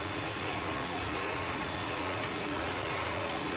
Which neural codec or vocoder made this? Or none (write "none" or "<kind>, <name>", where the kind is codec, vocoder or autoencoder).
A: vocoder, Vocos